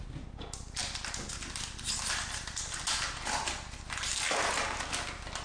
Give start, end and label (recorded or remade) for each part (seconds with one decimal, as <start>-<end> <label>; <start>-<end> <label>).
0.0-5.4 recorded